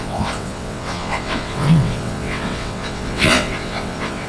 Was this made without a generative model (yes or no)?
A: no